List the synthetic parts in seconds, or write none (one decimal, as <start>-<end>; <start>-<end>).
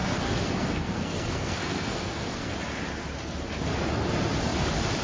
0.0-2.5